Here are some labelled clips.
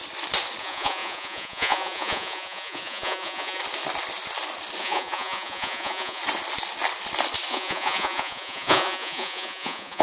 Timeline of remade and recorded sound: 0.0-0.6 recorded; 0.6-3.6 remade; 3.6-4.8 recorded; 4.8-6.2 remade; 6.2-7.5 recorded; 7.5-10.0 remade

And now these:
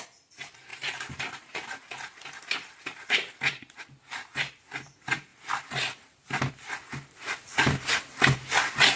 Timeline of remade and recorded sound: 0.0-9.0 recorded

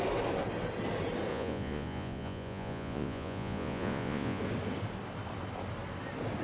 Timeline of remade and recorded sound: 0.0-1.3 recorded; 1.3-4.4 remade; 4.4-6.4 recorded

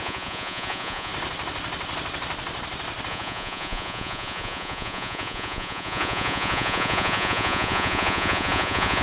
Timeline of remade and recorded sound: 0.0-1.1 remade; 1.1-3.1 recorded; 3.1-9.0 remade

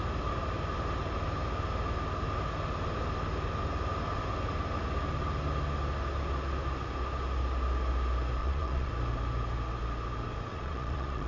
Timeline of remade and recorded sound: 0.0-8.4 recorded; 8.4-8.9 remade; 8.9-10.5 recorded; 10.5-11.3 remade

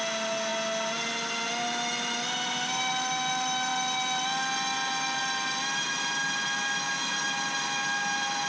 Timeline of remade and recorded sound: 0.0-8.5 recorded

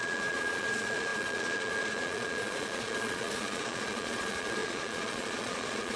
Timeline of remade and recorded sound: 0.0-6.0 remade

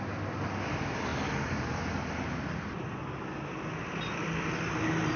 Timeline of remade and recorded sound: 0.0-5.2 recorded